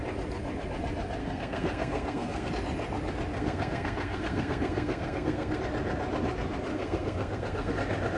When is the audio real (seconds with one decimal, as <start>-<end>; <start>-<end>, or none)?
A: 0.0-1.2; 2.5-3.3; 5.6-6.7; 7.7-8.2